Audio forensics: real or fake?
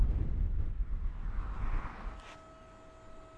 real